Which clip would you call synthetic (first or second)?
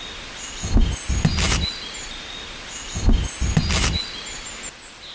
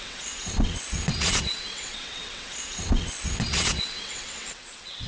second